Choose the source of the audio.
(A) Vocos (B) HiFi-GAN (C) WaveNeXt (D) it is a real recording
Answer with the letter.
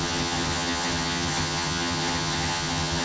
B